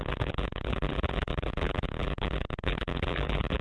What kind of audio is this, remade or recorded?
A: remade